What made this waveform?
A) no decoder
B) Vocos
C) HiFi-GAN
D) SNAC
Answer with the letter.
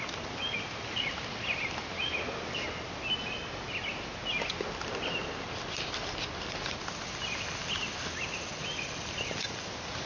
A